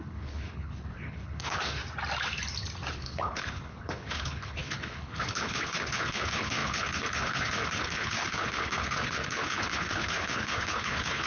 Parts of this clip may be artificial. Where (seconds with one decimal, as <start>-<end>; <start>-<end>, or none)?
0.0-1.8; 2.9-11.3